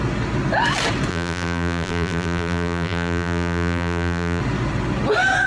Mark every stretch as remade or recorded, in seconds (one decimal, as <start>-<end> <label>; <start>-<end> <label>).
0.0-1.1 recorded; 1.1-4.4 remade; 4.4-5.5 recorded